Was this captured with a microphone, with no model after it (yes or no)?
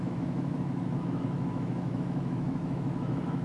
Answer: no